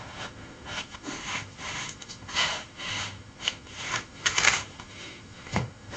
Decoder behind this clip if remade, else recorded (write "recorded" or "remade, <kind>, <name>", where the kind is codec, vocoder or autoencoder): remade, autoencoder, DAC-VAE